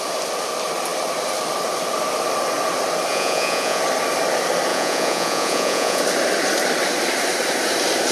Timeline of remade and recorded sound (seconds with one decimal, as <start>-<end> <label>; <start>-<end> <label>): 0.0-3.1 recorded; 3.1-3.8 remade; 3.8-4.7 recorded; 4.7-6.0 remade; 6.0-8.1 recorded

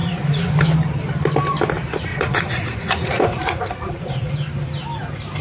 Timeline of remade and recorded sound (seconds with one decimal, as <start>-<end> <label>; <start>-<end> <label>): 0.0-0.5 remade; 0.5-2.1 recorded; 2.1-4.3 remade; 4.3-5.4 recorded

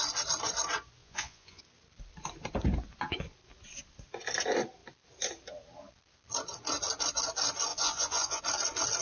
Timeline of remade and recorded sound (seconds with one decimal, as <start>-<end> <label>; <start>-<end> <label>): 0.0-1.0 recorded; 1.0-1.6 remade; 1.6-7.7 recorded; 7.7-8.4 remade; 8.4-9.0 recorded

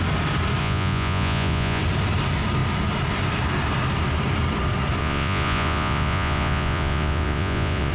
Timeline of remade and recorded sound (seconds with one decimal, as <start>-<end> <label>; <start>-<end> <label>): 0.0-0.6 recorded; 0.6-1.8 remade; 1.8-5.0 recorded; 5.0-7.9 remade

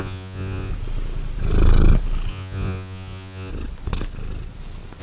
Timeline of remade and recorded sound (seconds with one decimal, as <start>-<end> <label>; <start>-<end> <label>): 0.0-0.7 remade; 0.7-2.3 recorded; 2.3-3.5 remade; 3.5-5.0 recorded

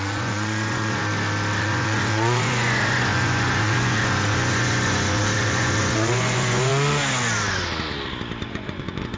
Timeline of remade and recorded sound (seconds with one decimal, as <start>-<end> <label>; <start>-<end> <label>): 0.0-1.0 remade; 1.0-1.6 recorded; 1.6-6.7 remade; 6.7-8.4 recorded; 8.4-9.2 remade